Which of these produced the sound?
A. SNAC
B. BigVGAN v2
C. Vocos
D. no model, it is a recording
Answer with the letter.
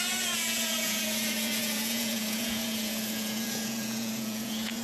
C